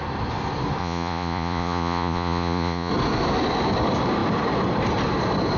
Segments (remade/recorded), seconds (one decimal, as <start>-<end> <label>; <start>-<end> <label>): 0.0-0.8 recorded; 0.8-2.9 remade; 2.9-5.6 recorded